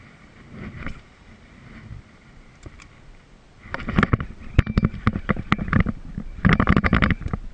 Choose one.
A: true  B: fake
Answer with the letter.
A